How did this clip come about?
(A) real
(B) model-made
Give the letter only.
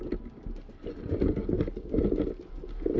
A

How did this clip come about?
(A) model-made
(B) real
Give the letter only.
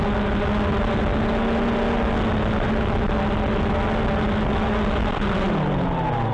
B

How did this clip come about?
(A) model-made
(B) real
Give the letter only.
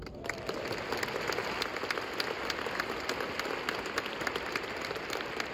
B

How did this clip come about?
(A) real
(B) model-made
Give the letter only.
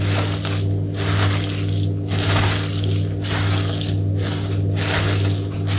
A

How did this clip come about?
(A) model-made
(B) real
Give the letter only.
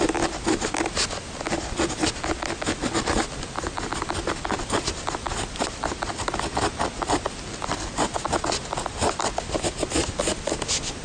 B